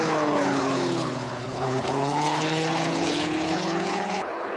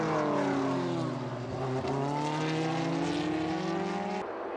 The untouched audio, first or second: second